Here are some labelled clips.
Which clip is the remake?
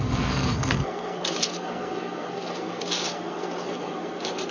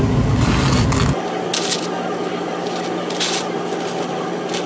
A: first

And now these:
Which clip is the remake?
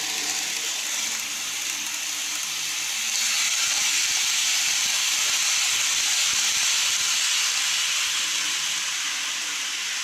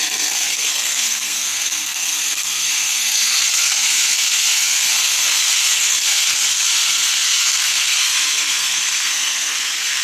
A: second